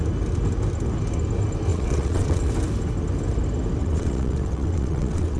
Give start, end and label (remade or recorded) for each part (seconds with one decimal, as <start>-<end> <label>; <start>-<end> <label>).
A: 0.0-1.7 recorded; 1.7-2.5 remade; 2.5-3.8 recorded; 3.8-5.4 remade